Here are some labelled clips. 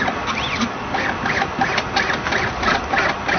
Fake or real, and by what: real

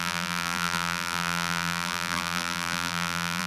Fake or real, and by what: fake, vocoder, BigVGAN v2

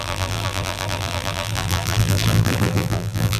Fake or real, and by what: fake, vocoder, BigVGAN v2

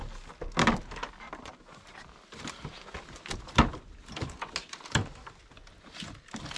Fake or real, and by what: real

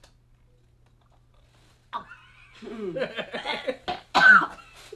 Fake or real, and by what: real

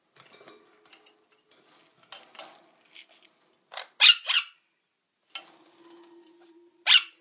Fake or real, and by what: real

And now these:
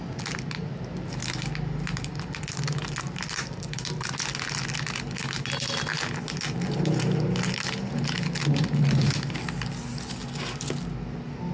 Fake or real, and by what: real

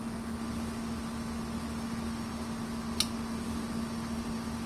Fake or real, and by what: real